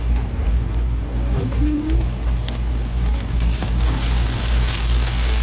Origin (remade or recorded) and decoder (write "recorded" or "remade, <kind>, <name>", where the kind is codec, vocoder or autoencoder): remade, codec, DAC